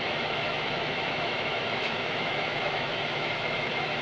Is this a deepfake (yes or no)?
yes